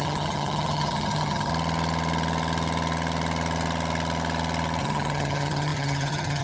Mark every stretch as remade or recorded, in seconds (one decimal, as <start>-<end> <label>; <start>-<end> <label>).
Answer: 0.0-1.5 remade; 1.5-4.8 recorded; 4.8-6.4 remade